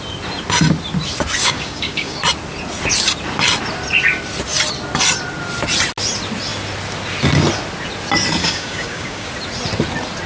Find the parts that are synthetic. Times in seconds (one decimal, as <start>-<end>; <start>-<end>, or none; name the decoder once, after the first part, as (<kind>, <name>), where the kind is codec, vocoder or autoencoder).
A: 1.4-2.2 (codec, DAC); 8.4-9.3